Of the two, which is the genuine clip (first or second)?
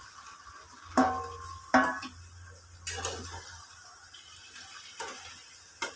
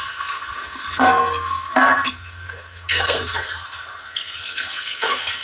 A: first